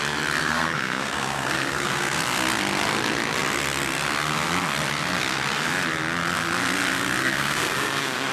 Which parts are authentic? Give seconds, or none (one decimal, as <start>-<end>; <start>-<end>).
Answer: 0.0-0.4; 2.2-7.2